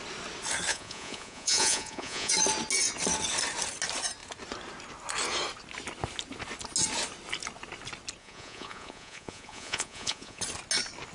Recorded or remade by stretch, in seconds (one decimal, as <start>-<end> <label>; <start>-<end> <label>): 0.0-0.7 recorded; 0.7-2.3 remade; 2.3-8.2 recorded; 8.2-10.4 remade; 10.4-11.1 recorded